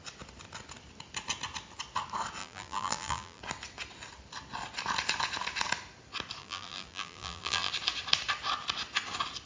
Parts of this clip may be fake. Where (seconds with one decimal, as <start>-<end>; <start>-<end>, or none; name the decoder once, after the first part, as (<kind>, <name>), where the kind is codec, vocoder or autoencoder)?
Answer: 2.4-3.4 (vocoder, BigVGAN v2); 6.4-7.7